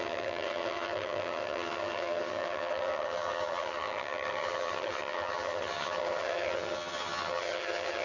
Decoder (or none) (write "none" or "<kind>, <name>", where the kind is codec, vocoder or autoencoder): vocoder, HiFi-GAN